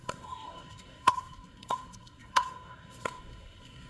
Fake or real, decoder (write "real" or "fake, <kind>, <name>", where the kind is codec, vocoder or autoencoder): fake, codec, SNAC